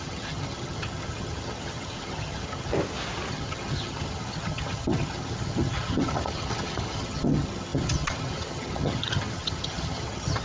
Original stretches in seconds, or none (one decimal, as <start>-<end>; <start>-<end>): 2.7-3.3